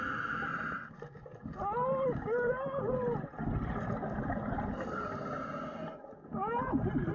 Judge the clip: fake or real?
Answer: real